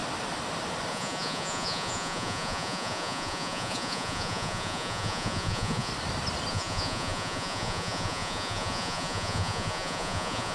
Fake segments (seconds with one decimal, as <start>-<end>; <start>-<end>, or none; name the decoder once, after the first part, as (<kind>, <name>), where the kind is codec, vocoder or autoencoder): 0.9-5.9 (vocoder, Vocos); 6.5-10.5